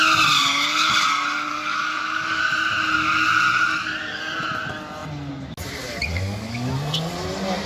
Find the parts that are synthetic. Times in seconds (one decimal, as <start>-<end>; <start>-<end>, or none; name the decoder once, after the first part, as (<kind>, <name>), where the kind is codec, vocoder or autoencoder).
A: 1.5-2.4 (codec, DAC); 6.1-6.7